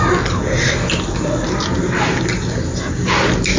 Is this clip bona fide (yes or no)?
yes